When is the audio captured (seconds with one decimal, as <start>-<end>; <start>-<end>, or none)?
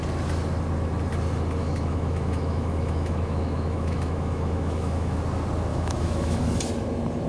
0.0-1.6; 5.2-5.7; 6.4-7.3